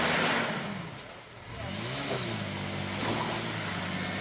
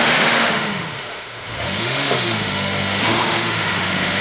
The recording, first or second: first